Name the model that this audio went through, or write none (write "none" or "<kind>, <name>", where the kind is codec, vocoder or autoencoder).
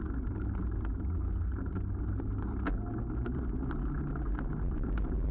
none